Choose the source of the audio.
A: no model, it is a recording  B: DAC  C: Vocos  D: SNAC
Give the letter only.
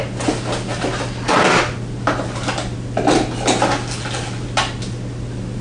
A